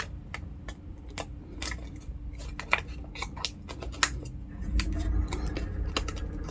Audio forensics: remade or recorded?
recorded